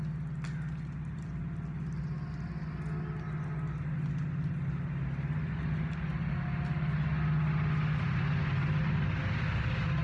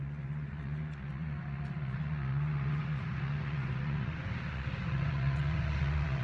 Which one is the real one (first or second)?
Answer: first